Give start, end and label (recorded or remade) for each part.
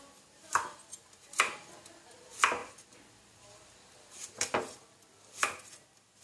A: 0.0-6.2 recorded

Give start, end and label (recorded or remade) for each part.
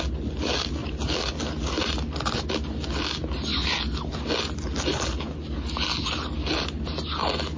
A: 0.0-7.6 recorded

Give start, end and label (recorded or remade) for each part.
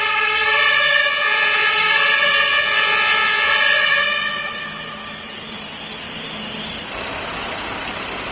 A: 0.0-1.1 recorded; 1.1-1.7 remade; 1.7-2.5 recorded; 2.5-3.5 remade; 3.5-8.3 recorded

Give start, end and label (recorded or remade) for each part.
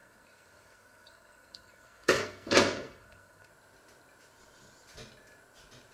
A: 0.0-3.5 remade; 3.5-5.9 recorded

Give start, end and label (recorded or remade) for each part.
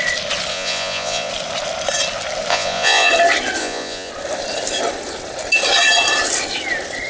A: 0.0-0.5 recorded; 0.5-1.3 remade; 1.3-2.5 recorded; 2.5-3.1 remade; 3.1-3.6 recorded; 3.6-4.1 remade; 4.1-7.1 recorded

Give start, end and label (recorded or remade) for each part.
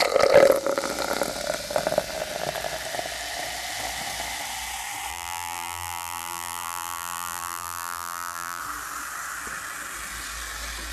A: 0.0-5.1 recorded; 5.1-8.6 remade; 8.6-10.9 recorded